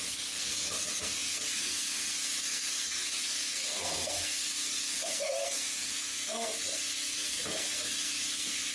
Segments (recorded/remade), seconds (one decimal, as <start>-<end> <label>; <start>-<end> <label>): 0.0-8.7 remade